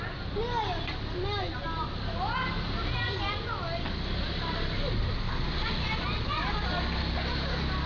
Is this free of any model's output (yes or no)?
yes